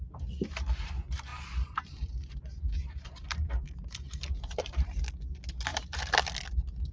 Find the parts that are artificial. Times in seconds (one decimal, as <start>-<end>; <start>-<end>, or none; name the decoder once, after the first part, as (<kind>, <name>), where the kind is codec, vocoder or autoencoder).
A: 1.3-5.0 (vocoder, BigVGAN v2); 5.7-6.3